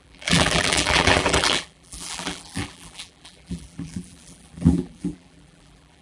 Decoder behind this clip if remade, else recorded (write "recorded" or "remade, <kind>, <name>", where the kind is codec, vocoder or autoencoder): remade, vocoder, BigVGAN v2